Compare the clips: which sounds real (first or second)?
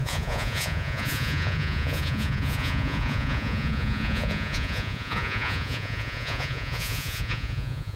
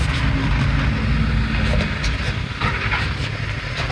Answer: second